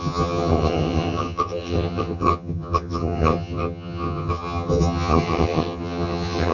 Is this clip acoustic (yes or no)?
no